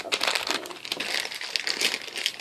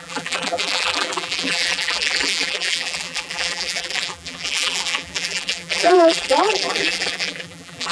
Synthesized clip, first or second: second